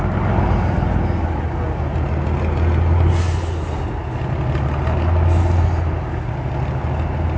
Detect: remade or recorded recorded